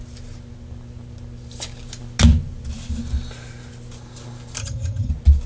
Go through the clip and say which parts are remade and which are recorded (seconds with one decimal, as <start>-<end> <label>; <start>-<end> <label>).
0.0-4.6 recorded; 4.6-5.1 remade; 5.1-5.5 recorded